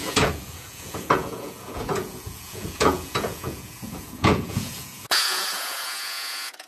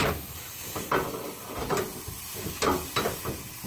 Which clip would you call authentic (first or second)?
second